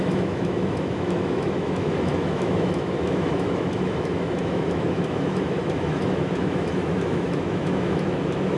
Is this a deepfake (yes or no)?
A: yes